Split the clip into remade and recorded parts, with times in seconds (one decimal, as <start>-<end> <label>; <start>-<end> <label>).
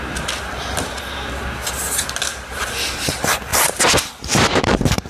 0.0-3.5 recorded; 3.5-5.1 remade